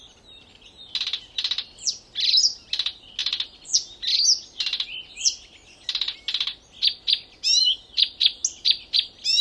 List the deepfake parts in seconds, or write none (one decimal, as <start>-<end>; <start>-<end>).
none